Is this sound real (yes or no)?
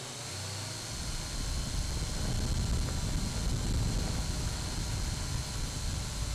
yes